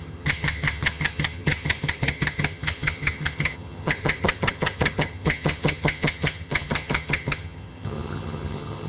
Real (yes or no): no